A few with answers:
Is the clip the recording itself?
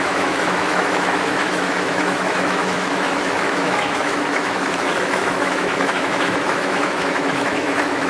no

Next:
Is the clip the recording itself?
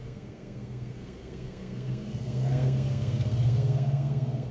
no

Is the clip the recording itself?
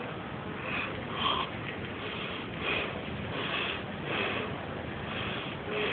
yes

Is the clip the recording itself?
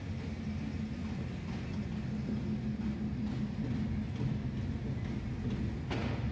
yes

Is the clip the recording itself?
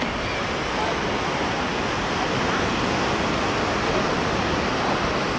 yes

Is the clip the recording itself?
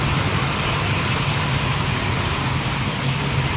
yes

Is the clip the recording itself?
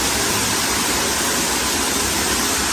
yes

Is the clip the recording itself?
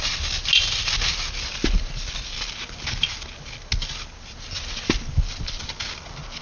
yes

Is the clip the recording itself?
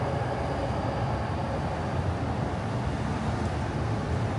yes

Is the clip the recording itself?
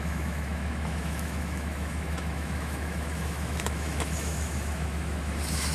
no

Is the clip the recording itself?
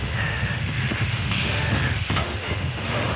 no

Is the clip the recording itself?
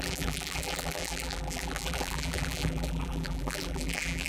no